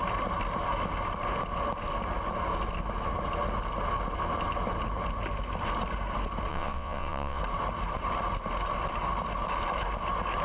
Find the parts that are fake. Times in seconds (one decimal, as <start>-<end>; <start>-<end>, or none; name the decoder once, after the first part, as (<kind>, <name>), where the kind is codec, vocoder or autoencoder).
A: 6.5-7.4 (vocoder, WaveNeXt)